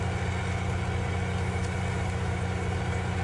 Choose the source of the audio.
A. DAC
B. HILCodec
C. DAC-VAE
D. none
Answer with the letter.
D